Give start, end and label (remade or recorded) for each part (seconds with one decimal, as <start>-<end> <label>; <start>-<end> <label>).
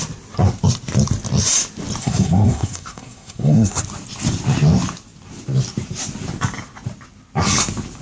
0.0-2.0 recorded; 2.0-3.8 remade; 3.8-8.0 recorded